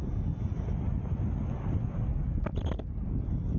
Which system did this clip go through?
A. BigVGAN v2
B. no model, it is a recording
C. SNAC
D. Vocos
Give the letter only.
B